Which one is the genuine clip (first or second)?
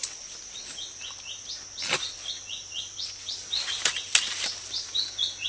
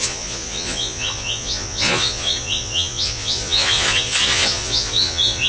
first